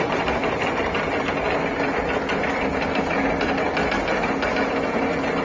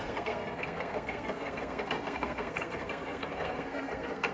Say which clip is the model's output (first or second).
second